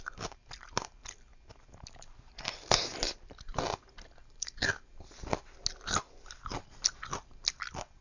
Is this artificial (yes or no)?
no